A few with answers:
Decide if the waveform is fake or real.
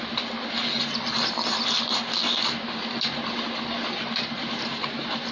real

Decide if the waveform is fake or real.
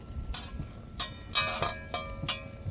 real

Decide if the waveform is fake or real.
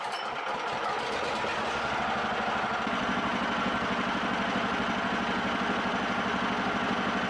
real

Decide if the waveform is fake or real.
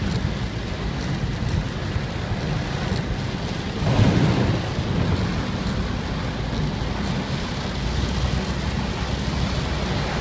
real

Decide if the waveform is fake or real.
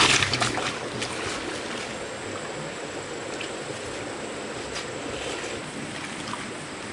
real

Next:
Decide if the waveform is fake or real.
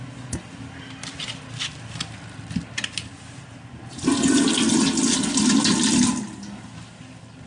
real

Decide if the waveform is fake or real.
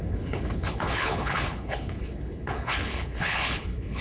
fake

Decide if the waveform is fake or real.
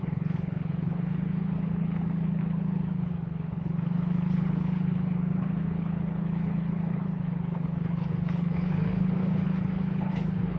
fake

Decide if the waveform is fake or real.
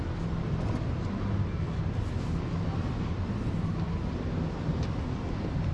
real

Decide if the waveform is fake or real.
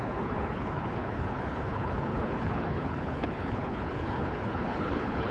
fake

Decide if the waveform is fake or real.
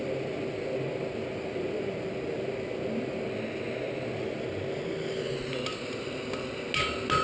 real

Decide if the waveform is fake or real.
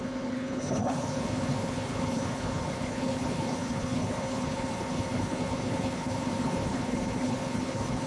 fake